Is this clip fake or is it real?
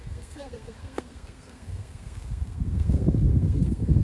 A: fake